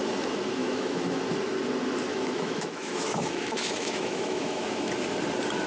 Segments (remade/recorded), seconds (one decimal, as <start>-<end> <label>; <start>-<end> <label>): 0.0-0.6 recorded; 0.6-1.2 remade; 1.2-2.1 recorded; 2.1-4.9 remade; 4.9-5.7 recorded